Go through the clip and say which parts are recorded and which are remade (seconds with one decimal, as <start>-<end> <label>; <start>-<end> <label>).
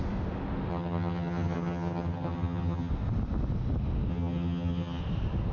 0.0-0.7 recorded; 0.7-2.9 remade; 2.9-4.1 recorded; 4.1-5.0 remade; 5.0-5.5 recorded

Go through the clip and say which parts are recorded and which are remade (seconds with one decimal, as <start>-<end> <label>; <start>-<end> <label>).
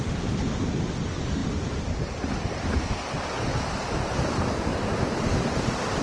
0.0-6.0 recorded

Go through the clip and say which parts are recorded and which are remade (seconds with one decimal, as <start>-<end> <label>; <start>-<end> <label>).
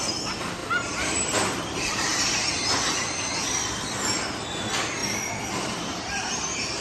0.0-0.6 recorded; 0.6-2.2 remade; 2.2-5.0 recorded; 5.0-6.3 remade; 6.3-6.8 recorded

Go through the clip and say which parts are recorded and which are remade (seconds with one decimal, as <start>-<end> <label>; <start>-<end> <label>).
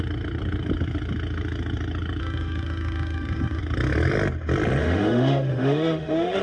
0.0-2.2 recorded; 2.2-3.6 remade; 3.6-4.8 recorded; 4.8-6.4 remade